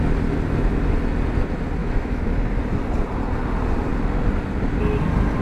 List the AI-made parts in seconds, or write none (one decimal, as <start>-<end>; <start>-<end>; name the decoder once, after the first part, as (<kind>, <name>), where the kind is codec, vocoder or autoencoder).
1.8-2.3 (autoencoder, DAC-VAE)